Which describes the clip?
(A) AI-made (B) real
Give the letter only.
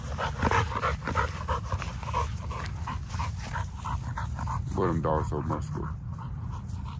A